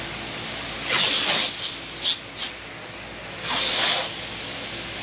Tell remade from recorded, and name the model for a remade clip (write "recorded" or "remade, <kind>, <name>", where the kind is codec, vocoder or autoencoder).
recorded